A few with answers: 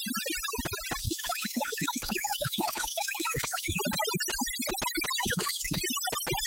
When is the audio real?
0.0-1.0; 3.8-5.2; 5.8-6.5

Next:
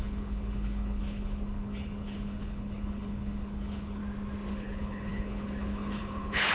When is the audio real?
4.0-4.5

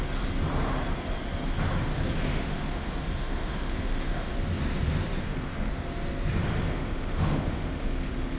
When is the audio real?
0.0-1.9; 4.3-5.2; 5.7-6.4

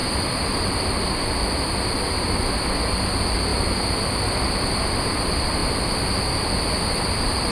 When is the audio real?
0.0-7.5

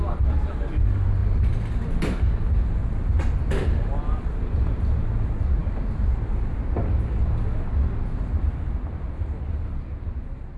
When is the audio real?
0.0-10.6

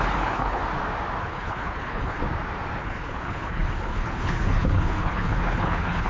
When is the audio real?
0.6-1.2; 2.2-2.8